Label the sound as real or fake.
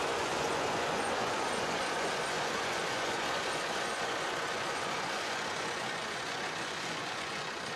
fake